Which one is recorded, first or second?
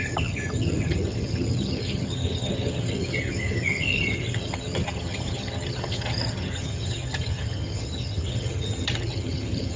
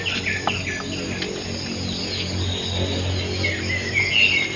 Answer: second